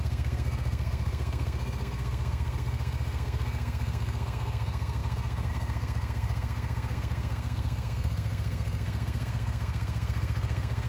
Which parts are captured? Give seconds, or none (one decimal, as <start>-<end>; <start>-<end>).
none